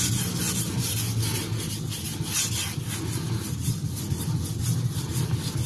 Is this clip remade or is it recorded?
recorded